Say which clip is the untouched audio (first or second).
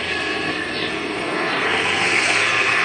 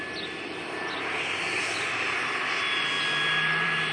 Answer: second